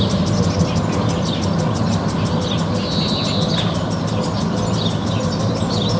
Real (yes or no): yes